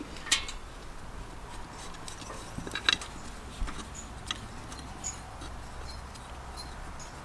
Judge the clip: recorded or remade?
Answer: recorded